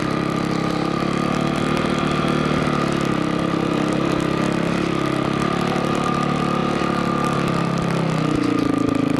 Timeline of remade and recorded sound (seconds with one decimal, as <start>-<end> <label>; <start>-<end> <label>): 0.0-9.2 recorded